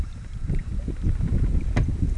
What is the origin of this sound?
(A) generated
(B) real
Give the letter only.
B